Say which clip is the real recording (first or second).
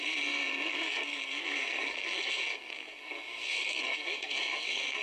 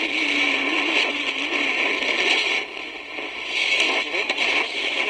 second